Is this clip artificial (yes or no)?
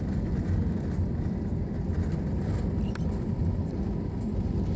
no